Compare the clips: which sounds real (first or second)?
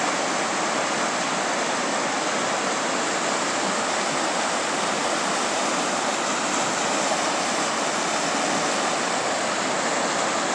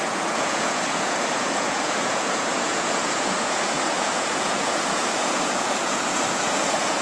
first